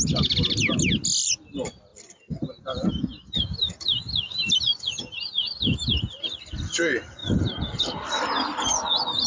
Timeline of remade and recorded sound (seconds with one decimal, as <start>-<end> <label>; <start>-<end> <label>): 0.0-9.3 recorded